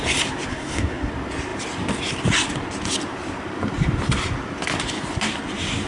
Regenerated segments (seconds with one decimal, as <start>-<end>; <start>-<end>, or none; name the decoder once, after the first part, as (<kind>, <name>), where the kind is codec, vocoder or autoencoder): 0.5-1.1 (codec, SNAC)

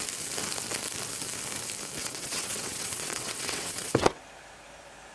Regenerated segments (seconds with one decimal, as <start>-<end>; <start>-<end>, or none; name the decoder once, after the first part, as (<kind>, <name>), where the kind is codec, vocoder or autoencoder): 2.0-4.2 (vocoder, WaveNeXt)

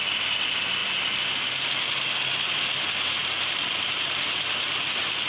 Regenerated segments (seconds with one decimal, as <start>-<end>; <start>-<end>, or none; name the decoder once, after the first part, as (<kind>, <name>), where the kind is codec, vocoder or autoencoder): none

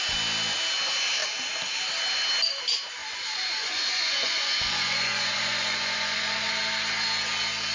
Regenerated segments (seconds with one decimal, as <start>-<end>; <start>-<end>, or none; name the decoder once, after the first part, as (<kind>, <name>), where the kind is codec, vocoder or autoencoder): 3.0-6.5 (vocoder, Vocos)

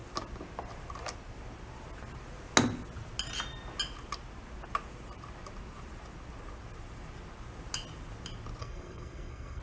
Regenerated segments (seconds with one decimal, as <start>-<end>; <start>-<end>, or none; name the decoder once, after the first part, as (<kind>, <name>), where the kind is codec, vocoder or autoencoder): 8.6-9.6 (codec, SNAC)

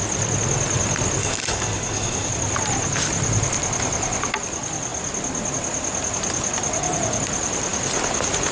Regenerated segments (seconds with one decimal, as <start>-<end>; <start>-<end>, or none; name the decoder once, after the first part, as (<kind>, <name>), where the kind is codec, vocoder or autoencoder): 1.2-2.3 (codec, DAC)